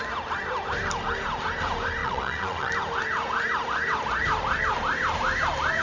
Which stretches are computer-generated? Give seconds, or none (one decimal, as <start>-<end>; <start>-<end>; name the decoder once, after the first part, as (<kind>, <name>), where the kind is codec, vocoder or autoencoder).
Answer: 2.0-2.7 (vocoder, WaveNeXt)